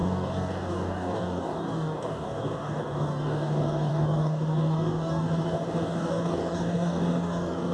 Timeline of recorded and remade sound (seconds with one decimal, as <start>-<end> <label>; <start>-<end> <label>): 0.0-7.7 remade